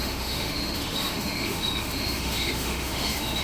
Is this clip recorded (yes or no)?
no